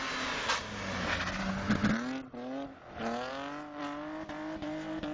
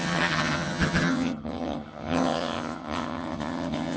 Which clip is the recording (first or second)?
first